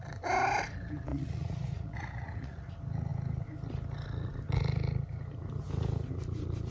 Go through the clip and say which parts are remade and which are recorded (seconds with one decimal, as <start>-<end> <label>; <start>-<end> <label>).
0.0-1.1 recorded; 1.1-2.7 remade; 2.7-6.7 recorded